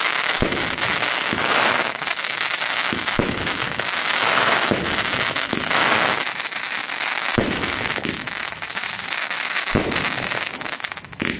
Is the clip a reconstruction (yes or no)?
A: yes